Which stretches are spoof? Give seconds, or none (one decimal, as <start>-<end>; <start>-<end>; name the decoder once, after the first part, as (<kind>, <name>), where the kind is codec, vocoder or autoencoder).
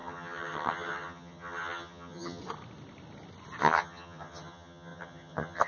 0.0-2.4 (vocoder, HiFi-GAN); 3.6-5.7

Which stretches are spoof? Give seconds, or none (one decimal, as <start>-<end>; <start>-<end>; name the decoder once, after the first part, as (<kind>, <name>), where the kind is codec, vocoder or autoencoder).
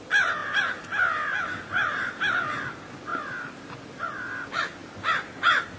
none